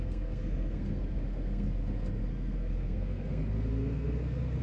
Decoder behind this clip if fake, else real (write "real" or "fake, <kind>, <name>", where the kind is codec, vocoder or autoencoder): fake, codec, SNAC